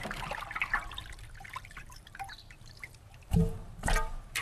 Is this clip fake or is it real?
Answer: fake